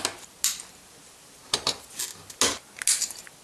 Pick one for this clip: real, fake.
real